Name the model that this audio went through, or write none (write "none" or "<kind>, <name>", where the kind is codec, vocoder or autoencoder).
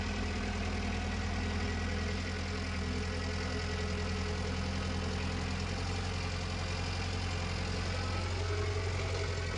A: none